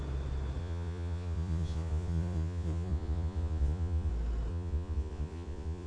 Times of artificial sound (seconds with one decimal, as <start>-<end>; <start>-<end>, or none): 0.6-4.1; 4.5-5.9